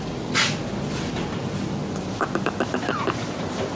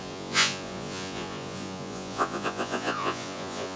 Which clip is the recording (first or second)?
first